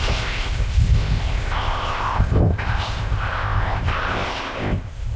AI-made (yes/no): yes